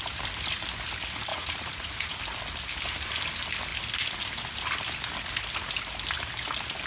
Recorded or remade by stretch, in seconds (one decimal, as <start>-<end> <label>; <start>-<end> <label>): 0.0-1.3 recorded; 1.3-2.2 remade; 2.2-6.9 recorded

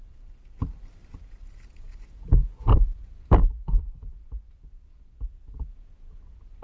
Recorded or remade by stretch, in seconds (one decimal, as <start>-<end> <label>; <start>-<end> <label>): 0.0-0.6 remade; 0.6-1.2 recorded; 1.2-6.6 remade

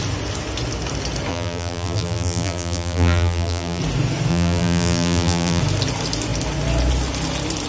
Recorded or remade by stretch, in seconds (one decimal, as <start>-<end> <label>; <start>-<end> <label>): 0.0-1.3 recorded; 1.3-3.8 remade; 3.8-4.3 recorded; 4.3-5.6 remade; 5.6-7.7 recorded

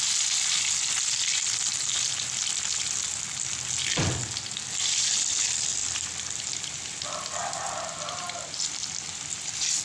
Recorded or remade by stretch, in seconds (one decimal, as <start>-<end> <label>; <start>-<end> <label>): 0.0-5.8 recorded; 5.8-6.4 remade; 6.4-9.8 recorded